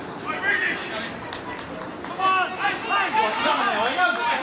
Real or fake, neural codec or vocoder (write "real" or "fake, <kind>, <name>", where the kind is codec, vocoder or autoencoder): real